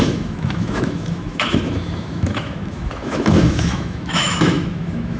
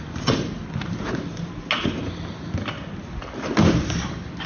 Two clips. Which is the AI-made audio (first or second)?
first